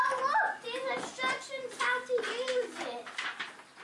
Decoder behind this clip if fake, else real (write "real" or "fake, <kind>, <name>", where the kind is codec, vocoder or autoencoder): real